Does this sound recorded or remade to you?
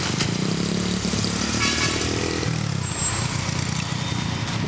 recorded